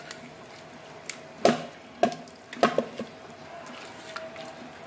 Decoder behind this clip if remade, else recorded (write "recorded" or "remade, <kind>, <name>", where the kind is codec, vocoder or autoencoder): recorded